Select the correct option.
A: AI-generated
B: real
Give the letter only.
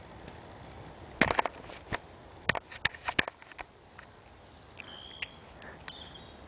B